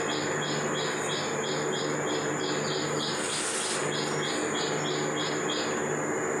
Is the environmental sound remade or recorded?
recorded